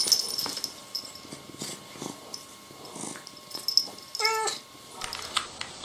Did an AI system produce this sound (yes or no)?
no